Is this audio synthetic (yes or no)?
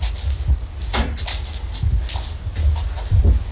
no